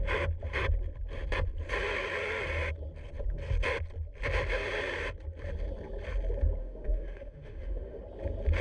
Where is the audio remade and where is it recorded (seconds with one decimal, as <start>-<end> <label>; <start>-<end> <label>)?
0.0-6.6 recorded; 6.6-8.0 remade; 8.0-8.6 recorded